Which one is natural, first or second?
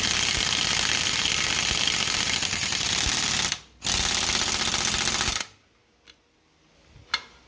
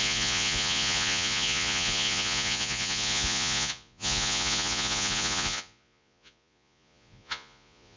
first